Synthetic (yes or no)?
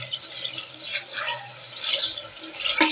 no